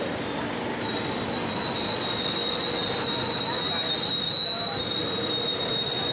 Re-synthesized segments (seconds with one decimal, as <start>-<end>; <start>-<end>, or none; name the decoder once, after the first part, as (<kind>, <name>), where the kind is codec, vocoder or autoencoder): none